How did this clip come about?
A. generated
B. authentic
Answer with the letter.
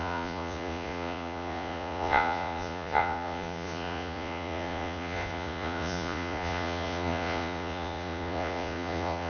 A